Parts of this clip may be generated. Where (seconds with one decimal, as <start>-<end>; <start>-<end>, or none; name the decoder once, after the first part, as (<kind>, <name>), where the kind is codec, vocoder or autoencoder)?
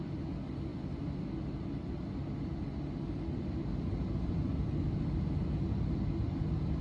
none